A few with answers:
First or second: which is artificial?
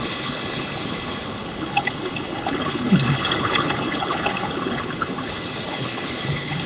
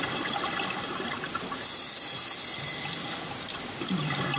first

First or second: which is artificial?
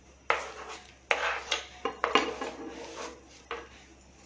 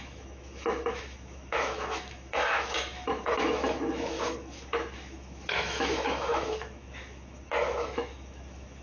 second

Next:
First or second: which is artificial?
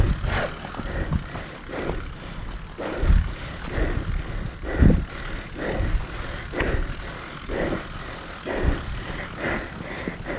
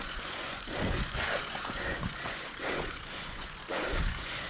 second